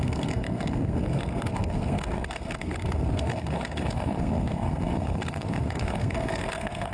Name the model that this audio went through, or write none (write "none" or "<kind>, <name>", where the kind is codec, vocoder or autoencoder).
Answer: codec, SNAC